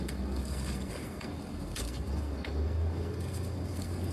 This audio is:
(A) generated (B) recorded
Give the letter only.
A